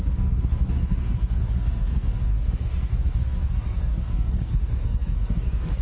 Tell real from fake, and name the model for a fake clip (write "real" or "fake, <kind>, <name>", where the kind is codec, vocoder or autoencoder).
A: fake, codec, SNAC